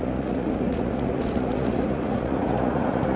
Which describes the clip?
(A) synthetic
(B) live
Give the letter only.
A